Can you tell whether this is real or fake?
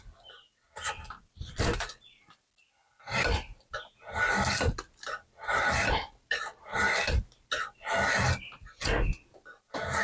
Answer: real